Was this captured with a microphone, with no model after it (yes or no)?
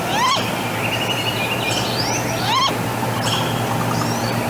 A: yes